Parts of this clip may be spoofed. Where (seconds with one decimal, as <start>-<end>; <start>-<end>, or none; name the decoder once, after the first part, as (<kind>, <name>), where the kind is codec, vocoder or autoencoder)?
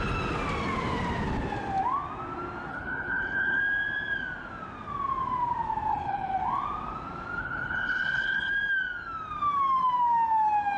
2.7-3.6 (codec, HILCodec); 5.9-6.4; 7.4-8.5